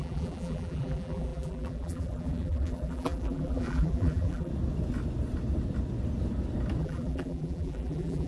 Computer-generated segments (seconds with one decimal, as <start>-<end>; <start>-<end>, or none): 0.0-4.5; 6.8-8.3